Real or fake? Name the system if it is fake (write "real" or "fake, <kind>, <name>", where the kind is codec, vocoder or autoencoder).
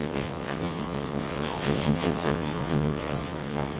fake, vocoder, WaveNeXt